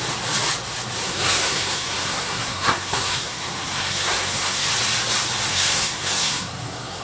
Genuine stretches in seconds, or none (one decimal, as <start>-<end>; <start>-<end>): 0.0-1.0; 4.7-5.5